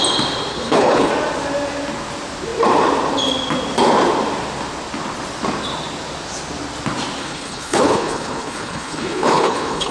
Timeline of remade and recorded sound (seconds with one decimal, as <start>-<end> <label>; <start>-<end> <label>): 0.0-0.5 recorded; 0.5-1.1 remade; 1.1-7.2 recorded; 7.2-9.9 remade